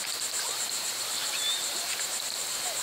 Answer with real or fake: fake